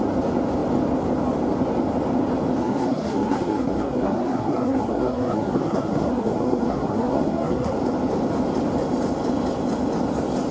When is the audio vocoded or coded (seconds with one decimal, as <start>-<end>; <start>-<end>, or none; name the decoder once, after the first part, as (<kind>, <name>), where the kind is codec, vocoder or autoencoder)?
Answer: 2.6-7.7 (codec, SNAC)